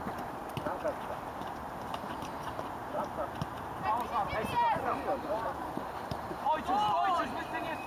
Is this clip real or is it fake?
fake